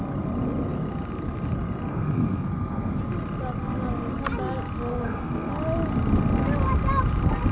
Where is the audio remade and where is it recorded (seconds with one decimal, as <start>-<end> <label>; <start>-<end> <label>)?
0.0-1.9 recorded; 1.9-3.0 remade; 3.0-4.9 recorded; 4.9-5.5 remade; 5.5-7.5 recorded